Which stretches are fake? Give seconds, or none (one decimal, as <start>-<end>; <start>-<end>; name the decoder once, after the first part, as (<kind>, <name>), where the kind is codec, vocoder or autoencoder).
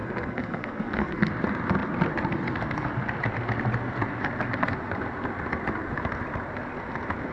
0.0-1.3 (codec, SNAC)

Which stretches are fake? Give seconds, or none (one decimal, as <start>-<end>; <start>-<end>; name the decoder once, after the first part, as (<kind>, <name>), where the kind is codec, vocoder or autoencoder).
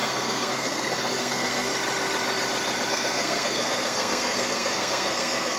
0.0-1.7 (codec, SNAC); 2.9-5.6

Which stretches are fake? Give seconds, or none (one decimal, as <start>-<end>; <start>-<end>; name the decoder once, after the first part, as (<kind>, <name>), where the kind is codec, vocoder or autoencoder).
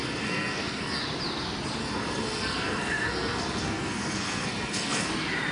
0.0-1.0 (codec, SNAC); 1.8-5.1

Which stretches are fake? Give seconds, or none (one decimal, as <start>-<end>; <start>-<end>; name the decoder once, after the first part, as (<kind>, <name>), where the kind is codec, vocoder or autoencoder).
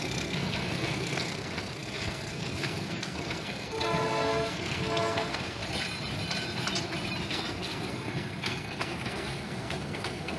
0.0-5.6 (codec, SNAC); 7.3-10.4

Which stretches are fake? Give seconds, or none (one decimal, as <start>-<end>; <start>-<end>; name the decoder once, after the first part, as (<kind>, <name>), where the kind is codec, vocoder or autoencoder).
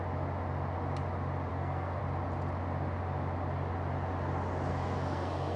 1.5-2.0 (codec, SNAC); 4.7-5.6